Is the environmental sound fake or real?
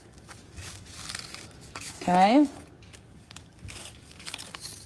fake